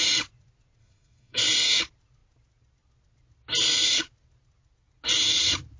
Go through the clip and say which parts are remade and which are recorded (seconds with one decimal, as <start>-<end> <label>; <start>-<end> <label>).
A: 0.0-0.8 recorded; 0.8-1.4 remade; 1.4-5.8 recorded